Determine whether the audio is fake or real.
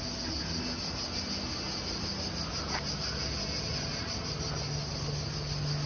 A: real